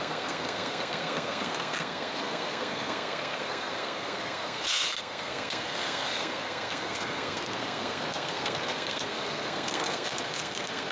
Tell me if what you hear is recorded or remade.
remade